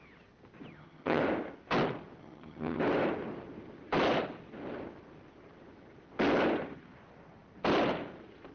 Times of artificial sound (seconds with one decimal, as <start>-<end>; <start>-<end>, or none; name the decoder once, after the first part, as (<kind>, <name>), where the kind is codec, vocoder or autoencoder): 0.7-1.2 (vocoder, HiFi-GAN); 2.2-2.8